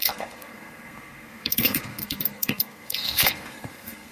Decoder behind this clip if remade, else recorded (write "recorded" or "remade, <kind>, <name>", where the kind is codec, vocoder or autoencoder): remade, codec, SNAC